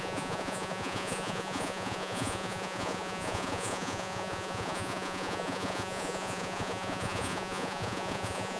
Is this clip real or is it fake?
fake